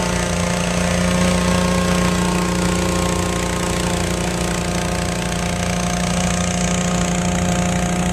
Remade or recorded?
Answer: recorded